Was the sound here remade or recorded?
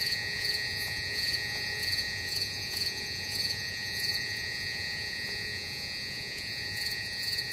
remade